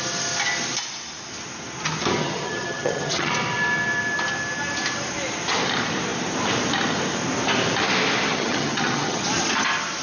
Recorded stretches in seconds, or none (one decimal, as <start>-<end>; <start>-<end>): 0.0-2.2; 3.3-8.3; 9.2-10.0